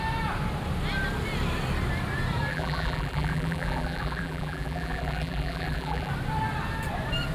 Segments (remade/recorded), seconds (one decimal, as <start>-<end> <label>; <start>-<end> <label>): 0.0-2.5 recorded; 2.5-6.1 remade; 6.1-7.3 recorded